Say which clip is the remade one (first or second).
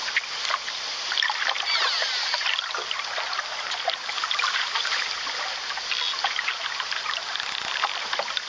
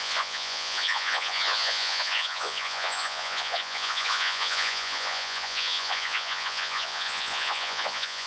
second